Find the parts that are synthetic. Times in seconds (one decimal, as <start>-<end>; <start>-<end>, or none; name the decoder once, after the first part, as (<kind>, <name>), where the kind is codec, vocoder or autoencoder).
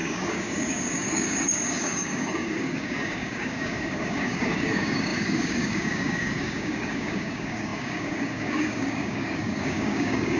0.0-10.4 (codec, DAC)